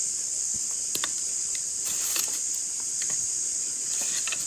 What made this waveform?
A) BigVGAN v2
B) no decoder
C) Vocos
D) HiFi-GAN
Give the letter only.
A